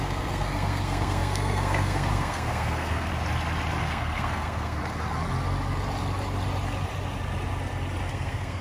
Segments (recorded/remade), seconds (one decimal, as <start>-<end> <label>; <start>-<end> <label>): 0.0-3.1 remade; 3.1-3.8 recorded; 3.8-4.8 remade; 4.8-8.1 recorded; 8.1-8.6 remade

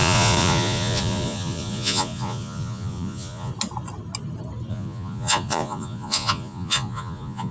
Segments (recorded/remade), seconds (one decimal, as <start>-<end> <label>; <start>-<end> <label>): 0.0-3.5 remade; 3.5-4.7 recorded; 4.7-7.5 remade

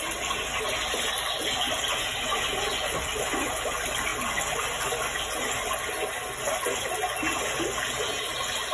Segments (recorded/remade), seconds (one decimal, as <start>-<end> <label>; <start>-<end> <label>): 0.0-8.7 recorded